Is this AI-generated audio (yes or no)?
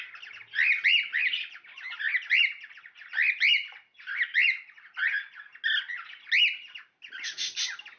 no